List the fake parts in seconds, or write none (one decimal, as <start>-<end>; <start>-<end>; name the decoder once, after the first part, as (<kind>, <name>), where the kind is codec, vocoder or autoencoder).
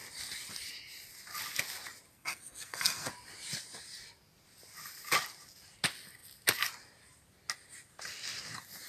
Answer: 2.1-3.1 (codec, SNAC)